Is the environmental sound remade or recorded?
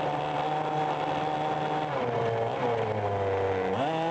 recorded